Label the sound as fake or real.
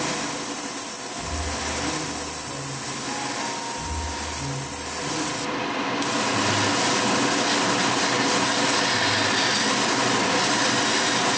real